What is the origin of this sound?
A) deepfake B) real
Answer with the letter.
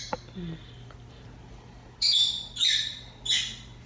B